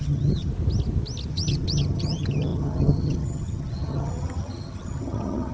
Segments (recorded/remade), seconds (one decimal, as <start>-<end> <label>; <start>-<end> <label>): 0.0-0.5 remade; 0.5-1.3 recorded; 1.3-5.5 remade